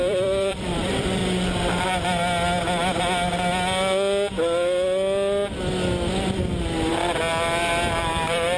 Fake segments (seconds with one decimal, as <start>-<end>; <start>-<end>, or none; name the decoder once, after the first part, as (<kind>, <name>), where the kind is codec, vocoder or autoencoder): 0.0-1.2 (vocoder, BigVGAN v2); 6.2-6.9; 8.0-8.6